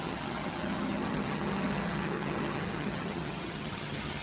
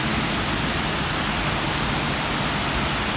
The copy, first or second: first